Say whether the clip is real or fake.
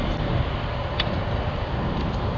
real